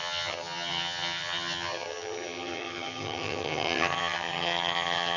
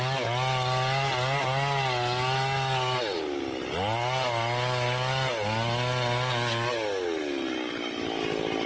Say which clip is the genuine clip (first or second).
second